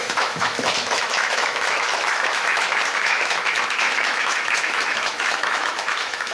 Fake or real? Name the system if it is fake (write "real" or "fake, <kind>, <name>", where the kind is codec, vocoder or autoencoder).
fake, autoencoder, DAC-VAE